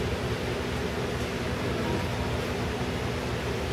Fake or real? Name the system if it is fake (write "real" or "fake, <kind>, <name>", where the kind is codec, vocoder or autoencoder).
real